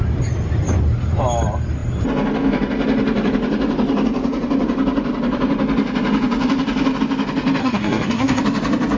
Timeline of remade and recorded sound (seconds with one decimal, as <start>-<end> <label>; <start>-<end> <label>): 0.0-7.6 recorded; 7.6-8.4 remade; 8.4-9.0 recorded